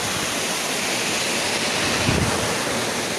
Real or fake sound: real